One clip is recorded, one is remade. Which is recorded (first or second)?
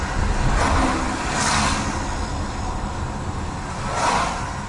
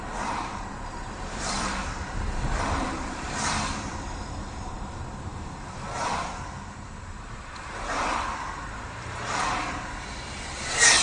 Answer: first